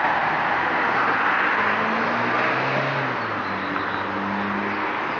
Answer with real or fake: real